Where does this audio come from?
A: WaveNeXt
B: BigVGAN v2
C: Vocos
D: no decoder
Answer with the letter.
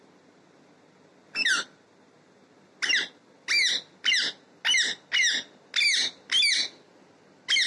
D